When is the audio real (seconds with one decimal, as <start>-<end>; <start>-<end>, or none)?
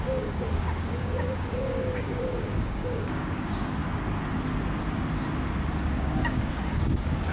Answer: 3.8-5.8